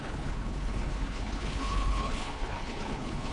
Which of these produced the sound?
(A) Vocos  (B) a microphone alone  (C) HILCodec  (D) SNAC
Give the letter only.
C